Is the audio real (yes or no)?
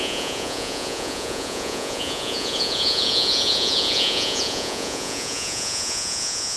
no